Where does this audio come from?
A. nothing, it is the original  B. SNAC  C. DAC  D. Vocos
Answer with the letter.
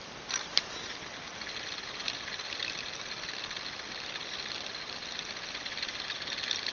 A